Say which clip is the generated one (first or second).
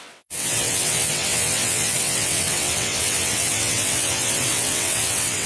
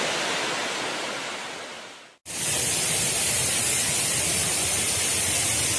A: first